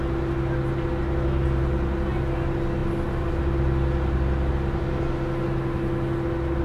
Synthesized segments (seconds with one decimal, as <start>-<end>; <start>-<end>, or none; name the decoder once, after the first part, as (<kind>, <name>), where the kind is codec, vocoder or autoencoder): none